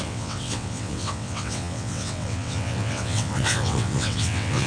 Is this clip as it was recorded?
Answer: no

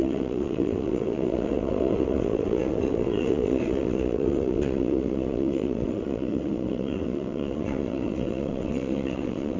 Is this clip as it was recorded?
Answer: no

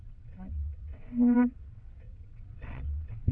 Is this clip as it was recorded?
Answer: no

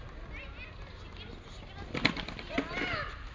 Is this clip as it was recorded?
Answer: yes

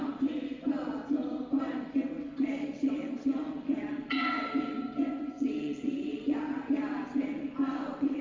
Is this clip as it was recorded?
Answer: no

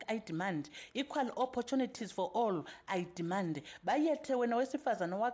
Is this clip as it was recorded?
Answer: yes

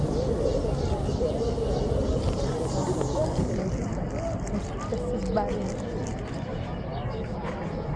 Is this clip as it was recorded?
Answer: yes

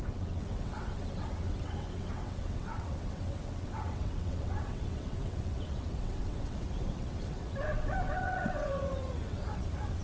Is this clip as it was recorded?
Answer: no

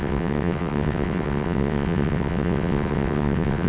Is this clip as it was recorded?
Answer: no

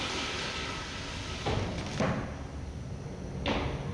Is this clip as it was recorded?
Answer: yes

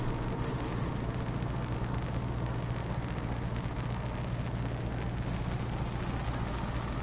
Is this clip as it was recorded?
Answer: yes